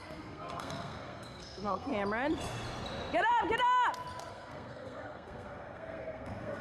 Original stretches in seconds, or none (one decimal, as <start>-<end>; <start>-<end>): 1.9-4.3